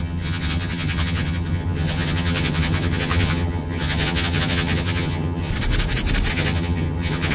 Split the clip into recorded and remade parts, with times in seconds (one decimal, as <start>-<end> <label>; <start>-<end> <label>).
0.0-5.5 remade; 5.5-6.3 recorded; 6.3-7.3 remade